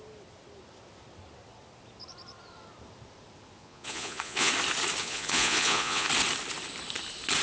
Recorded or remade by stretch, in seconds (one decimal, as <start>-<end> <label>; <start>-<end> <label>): 0.0-3.6 recorded; 3.6-4.5 remade; 4.5-5.0 recorded; 5.0-6.1 remade; 6.1-7.4 recorded